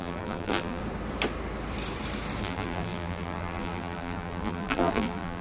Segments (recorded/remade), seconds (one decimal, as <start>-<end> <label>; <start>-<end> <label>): 0.0-0.8 remade; 0.8-2.4 recorded; 2.4-5.4 remade